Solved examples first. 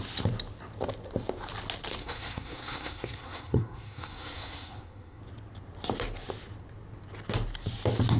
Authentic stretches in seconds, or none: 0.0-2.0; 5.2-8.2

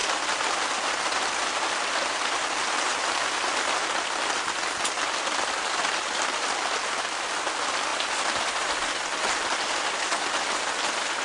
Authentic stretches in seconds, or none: 0.0-11.2

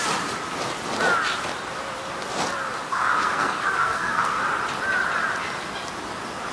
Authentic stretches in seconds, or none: 0.0-2.9; 4.4-6.5

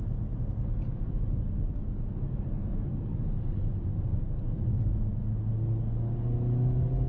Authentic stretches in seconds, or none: 0.0-2.2; 2.9-7.1